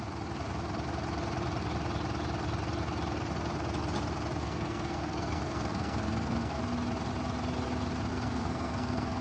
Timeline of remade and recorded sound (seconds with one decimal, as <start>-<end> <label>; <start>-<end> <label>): 0.0-4.4 recorded; 4.4-6.6 remade; 6.6-8.1 recorded; 8.1-9.2 remade